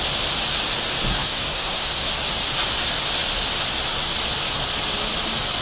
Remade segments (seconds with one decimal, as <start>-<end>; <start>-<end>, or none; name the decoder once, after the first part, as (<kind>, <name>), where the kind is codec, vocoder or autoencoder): 1.1-2.1 (codec, SNAC)